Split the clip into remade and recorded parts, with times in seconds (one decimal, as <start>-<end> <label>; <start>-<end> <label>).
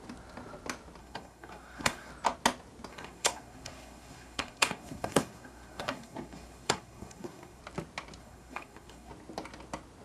0.0-1.0 recorded; 1.0-2.1 remade; 2.1-2.9 recorded; 2.9-7.6 remade; 7.6-8.2 recorded; 8.2-9.1 remade; 9.1-10.0 recorded